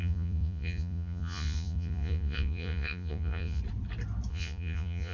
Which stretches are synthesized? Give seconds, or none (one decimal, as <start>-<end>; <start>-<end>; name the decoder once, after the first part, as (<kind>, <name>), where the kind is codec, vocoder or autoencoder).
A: 0.0-3.6 (vocoder, Vocos); 4.3-5.1